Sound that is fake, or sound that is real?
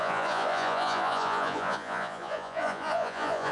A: fake